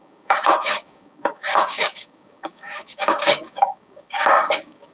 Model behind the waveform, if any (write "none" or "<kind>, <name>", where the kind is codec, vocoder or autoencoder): codec, DAC